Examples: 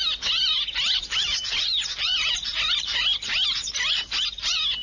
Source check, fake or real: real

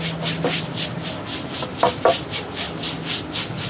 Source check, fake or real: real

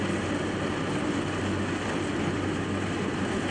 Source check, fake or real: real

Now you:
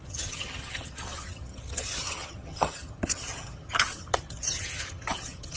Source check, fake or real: fake